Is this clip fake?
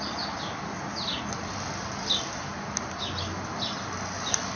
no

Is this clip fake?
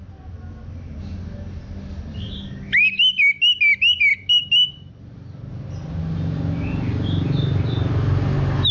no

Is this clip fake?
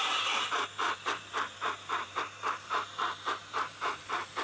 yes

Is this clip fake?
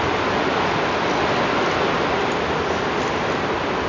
no